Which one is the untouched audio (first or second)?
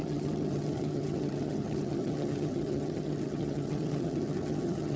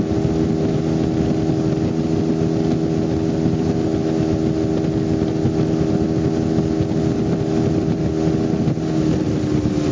second